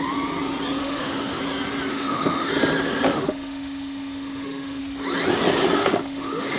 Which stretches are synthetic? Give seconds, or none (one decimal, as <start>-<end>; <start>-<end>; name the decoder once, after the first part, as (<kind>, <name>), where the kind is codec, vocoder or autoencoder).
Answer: 0.8-1.4 (autoencoder, DAC-VAE); 1.9-2.5; 3.1-4.8; 5.8-6.6